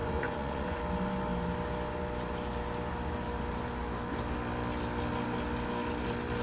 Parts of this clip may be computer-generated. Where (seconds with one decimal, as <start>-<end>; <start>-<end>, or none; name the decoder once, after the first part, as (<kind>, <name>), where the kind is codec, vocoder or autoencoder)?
0.0-0.8 (vocoder, Vocos)